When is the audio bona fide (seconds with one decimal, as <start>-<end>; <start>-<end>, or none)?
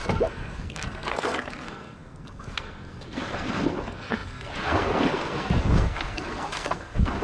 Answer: none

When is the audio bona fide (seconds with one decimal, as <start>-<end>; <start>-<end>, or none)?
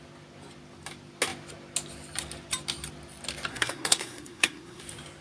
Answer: 0.0-3.5; 4.8-5.2